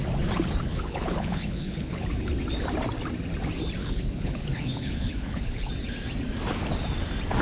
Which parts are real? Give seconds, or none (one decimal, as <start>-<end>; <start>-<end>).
0.0-0.7; 2.1-3.8; 5.7-7.4